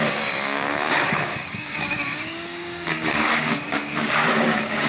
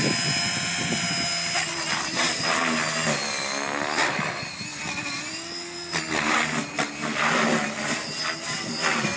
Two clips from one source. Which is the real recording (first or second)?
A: second